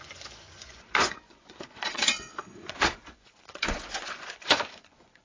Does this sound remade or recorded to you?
remade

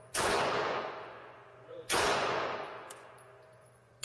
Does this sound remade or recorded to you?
remade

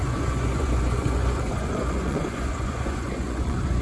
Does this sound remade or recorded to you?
remade